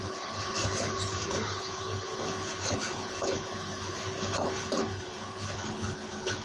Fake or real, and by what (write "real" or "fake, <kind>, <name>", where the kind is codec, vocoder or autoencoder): fake, codec, HILCodec